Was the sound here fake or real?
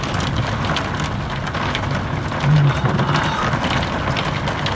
real